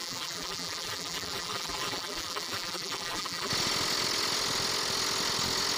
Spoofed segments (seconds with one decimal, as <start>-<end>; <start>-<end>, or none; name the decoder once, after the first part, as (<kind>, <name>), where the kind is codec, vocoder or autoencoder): 0.0-3.5 (vocoder, BigVGAN v2)